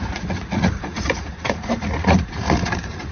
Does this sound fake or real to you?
fake